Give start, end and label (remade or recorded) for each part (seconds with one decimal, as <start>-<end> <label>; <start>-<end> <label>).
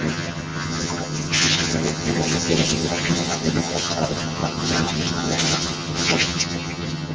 0.0-7.1 remade